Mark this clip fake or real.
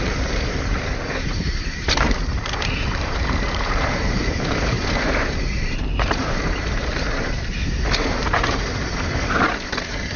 fake